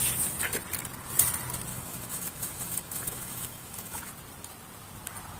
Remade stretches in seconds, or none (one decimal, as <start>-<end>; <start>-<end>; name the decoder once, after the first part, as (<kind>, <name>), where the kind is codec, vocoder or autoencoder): 1.7-4.1 (autoencoder, DAC-VAE)